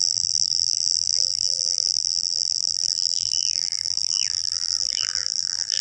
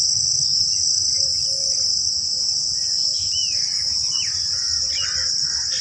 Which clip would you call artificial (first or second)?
first